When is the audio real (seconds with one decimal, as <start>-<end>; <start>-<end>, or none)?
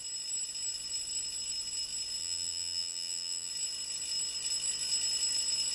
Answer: 0.0-2.2; 3.5-5.7